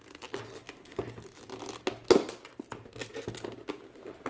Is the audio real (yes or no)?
yes